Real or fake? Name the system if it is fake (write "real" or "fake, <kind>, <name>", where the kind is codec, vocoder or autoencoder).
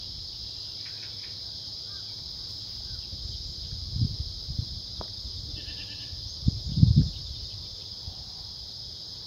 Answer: real